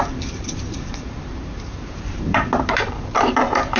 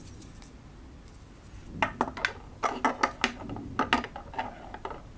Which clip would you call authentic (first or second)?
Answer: second